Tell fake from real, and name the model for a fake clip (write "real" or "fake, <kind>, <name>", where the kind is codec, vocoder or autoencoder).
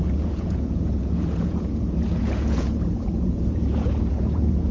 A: fake, vocoder, Vocos